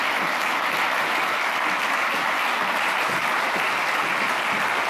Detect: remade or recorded recorded